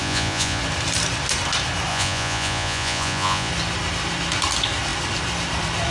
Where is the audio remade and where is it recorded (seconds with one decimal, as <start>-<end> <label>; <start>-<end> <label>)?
0.0-0.6 remade; 0.6-1.9 recorded; 1.9-3.5 remade; 3.5-5.9 recorded